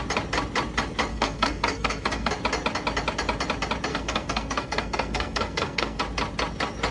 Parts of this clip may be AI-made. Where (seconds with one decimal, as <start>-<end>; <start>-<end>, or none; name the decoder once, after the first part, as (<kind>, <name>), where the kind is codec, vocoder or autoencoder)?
1.1-2.3 (codec, SNAC); 3.9-6.0